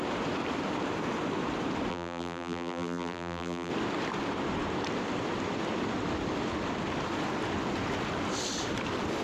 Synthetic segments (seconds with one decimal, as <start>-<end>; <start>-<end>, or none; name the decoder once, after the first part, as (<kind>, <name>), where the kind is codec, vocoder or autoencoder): 1.9-3.7 (vocoder, BigVGAN v2)